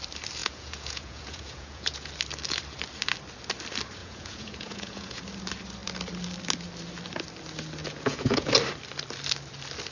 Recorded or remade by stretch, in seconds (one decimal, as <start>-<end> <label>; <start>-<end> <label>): 0.0-0.4 recorded; 0.4-2.1 remade; 2.1-4.0 recorded; 4.0-5.2 remade; 5.2-7.8 recorded; 7.8-8.5 remade; 8.5-9.9 recorded